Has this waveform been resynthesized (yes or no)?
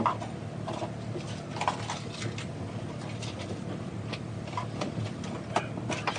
no